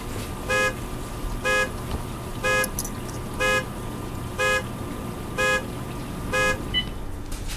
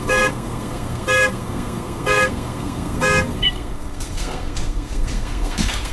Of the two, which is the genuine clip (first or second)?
first